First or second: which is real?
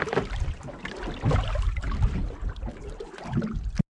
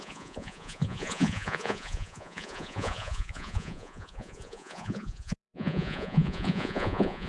first